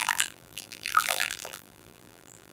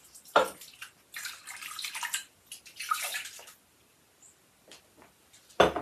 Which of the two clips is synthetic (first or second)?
first